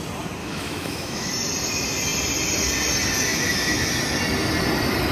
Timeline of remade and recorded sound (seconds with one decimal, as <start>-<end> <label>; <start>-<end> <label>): 0.0-0.4 recorded; 0.4-1.3 remade; 1.3-3.3 recorded; 3.3-3.9 remade; 3.9-5.1 recorded